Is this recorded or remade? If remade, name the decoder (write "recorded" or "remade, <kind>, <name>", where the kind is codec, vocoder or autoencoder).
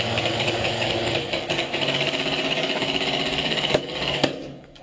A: remade, codec, DAC